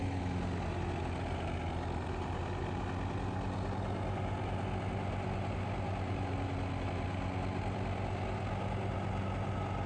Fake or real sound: real